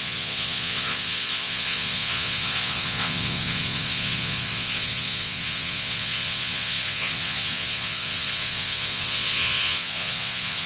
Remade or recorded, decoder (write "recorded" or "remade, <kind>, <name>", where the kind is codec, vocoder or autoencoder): remade, vocoder, Vocos